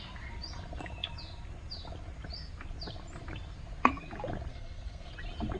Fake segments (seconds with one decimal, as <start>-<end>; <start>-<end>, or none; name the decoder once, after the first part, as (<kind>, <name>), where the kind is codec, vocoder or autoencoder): 4.5-5.1 (codec, SNAC)